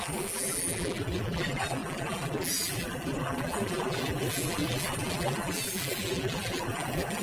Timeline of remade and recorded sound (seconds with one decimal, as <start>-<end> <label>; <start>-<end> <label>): 0.0-7.2 remade